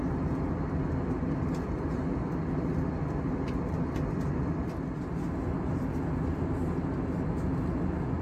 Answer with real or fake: real